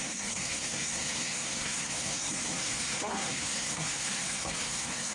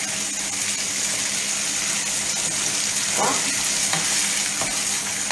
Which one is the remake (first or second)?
first